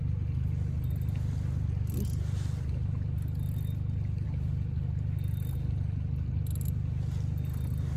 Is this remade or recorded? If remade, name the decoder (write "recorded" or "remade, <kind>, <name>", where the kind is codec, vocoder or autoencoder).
recorded